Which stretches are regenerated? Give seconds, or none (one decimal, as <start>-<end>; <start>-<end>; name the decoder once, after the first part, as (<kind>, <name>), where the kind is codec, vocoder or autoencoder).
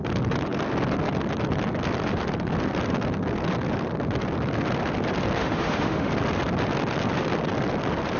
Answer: 5.4-6.1 (autoencoder, DAC-VAE)